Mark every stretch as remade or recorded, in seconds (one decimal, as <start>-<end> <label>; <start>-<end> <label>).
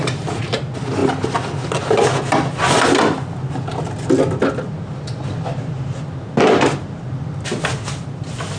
0.0-0.6 remade; 0.6-8.6 recorded